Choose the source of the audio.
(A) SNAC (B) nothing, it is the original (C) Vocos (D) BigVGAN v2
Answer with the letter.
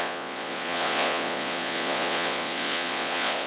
C